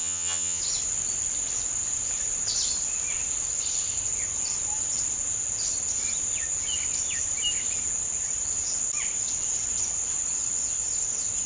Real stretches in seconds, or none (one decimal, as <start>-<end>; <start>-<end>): 0.6-11.5

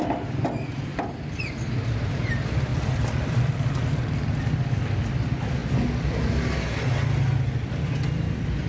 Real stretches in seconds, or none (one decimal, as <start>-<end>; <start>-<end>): 0.0-0.9; 1.4-2.7; 5.0-8.7

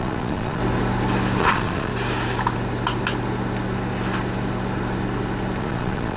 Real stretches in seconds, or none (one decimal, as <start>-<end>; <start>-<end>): 0.6-1.4; 1.9-5.6

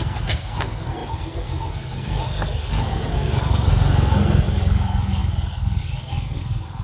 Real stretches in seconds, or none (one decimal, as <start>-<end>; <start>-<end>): none